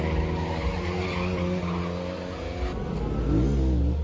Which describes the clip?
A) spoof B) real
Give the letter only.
B